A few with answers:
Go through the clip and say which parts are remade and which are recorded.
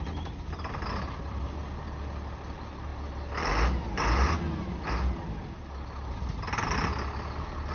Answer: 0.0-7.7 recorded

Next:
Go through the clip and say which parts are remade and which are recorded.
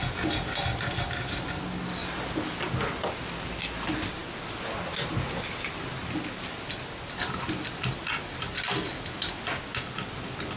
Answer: 0.0-10.6 recorded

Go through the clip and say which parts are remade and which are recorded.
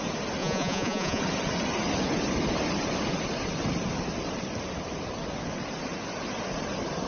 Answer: 0.0-0.4 recorded; 0.4-1.2 remade; 1.2-7.1 recorded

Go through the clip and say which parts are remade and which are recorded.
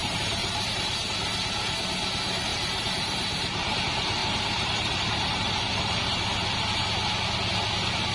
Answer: 0.0-0.9 remade; 0.9-2.5 recorded; 2.5-3.8 remade; 3.8-4.2 recorded; 4.2-6.2 remade; 6.2-8.1 recorded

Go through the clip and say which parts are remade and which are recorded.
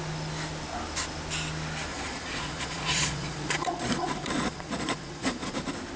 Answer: 0.0-1.9 recorded; 1.9-5.5 remade; 5.5-6.0 recorded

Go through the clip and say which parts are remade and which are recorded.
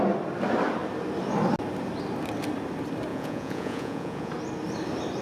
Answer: 0.0-3.1 recorded; 3.1-4.3 remade; 4.3-5.2 recorded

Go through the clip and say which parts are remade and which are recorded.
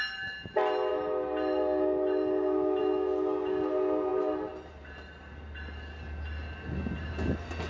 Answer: 0.0-7.7 recorded